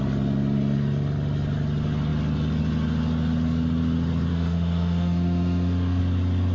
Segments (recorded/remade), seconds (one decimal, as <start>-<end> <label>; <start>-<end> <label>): 0.0-4.3 recorded; 4.3-6.0 remade; 6.0-6.5 recorded